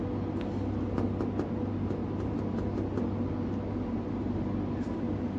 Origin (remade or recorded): recorded